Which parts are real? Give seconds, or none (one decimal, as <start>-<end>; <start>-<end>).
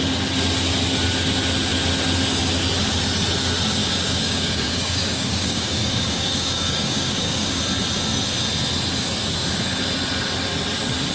0.0-3.8; 7.6-11.1